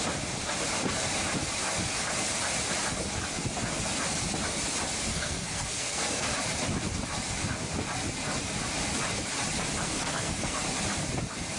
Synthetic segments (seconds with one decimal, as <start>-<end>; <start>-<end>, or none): 5.1-6.3; 9.8-10.6